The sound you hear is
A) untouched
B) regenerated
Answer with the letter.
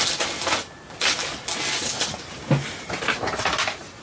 A